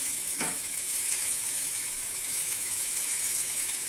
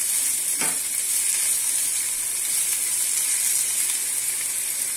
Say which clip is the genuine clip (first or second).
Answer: second